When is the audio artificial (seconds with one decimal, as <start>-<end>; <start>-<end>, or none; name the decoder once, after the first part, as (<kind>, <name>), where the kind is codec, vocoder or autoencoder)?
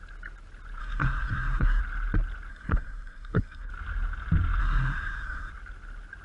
0.8-1.8 (codec, SNAC); 2.5-3.7; 4.6-5.5